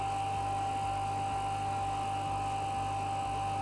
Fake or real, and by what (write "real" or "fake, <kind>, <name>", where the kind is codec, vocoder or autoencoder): real